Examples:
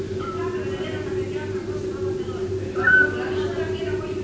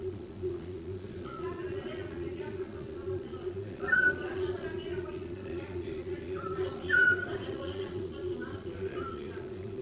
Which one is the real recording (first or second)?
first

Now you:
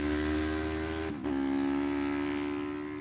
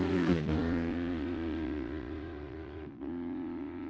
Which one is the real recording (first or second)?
first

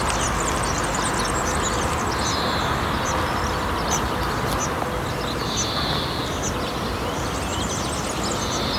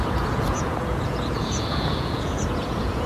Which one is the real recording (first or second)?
first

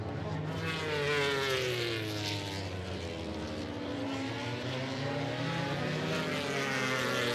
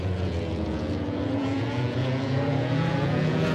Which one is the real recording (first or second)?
first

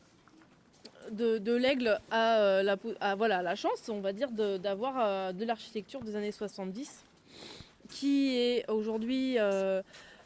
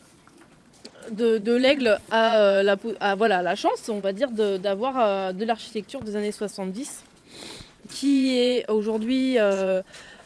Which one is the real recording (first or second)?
first